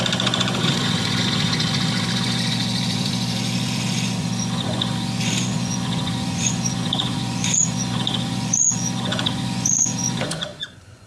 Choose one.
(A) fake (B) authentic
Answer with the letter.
A